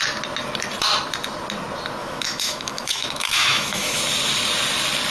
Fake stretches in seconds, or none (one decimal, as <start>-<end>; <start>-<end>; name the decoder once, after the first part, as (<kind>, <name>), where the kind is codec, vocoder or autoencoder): 2.0-4.0 (autoencoder, DAC-VAE)